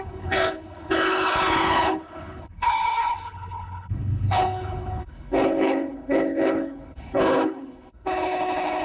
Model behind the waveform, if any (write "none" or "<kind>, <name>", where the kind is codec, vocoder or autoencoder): codec, HILCodec